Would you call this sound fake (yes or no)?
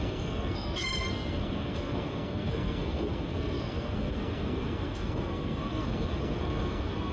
yes